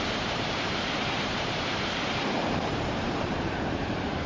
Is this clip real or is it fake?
fake